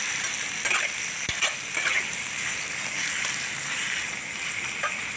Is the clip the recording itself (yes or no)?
yes